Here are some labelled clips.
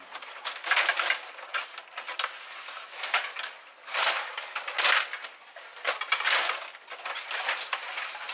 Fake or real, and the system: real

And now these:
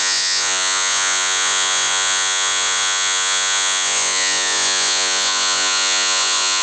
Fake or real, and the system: fake, vocoder, Vocos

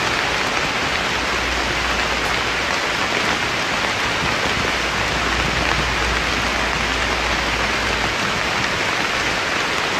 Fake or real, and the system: real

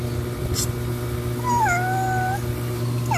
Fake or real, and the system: real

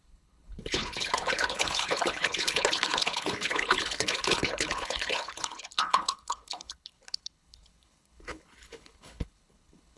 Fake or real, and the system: fake, codec, HILCodec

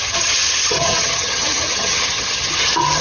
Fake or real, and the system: fake, vocoder, HiFi-GAN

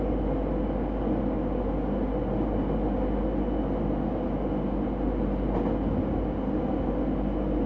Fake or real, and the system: real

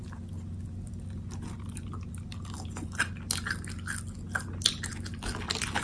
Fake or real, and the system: real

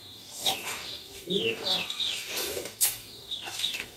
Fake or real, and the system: fake, codec, DAC